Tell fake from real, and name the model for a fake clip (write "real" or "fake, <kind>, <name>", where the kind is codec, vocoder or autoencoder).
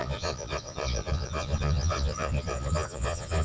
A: fake, vocoder, Vocos